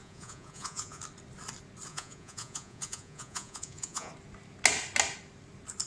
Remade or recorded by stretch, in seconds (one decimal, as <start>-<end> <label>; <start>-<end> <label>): 0.0-1.0 remade; 1.0-1.9 recorded; 1.9-4.1 remade; 4.1-5.9 recorded